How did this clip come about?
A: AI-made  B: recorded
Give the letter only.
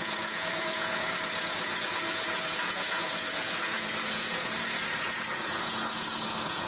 A